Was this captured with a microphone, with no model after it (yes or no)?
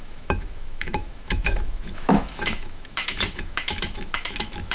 no